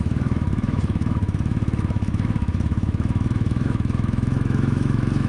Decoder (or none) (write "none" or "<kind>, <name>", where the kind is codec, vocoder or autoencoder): autoencoder, DAC-VAE